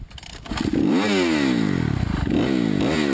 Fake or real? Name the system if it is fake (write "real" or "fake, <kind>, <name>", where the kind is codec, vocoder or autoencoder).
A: real